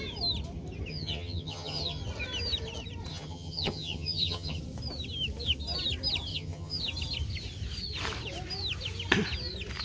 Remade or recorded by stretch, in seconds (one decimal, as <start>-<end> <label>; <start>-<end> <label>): 0.0-0.9 recorded; 0.9-2.0 remade; 2.0-3.1 recorded; 3.1-4.6 remade; 4.6-6.3 recorded; 6.3-6.8 remade; 6.8-9.8 recorded